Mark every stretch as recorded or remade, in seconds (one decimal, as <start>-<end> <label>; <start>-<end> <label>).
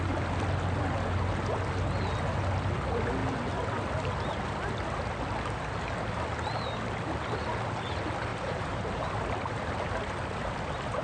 0.0-8.3 recorded; 8.3-9.1 remade; 9.1-11.0 recorded